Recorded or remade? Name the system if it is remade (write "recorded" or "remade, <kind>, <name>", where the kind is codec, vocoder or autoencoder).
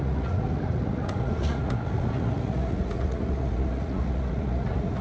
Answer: remade, vocoder, Vocos